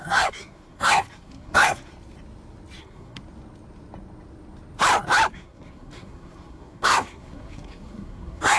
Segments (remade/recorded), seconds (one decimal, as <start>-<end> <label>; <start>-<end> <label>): 0.0-1.9 remade; 1.9-2.8 recorded; 2.8-3.2 remade; 3.2-5.3 recorded; 5.3-8.6 remade